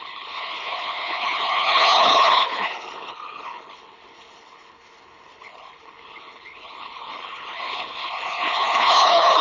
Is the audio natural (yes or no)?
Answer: no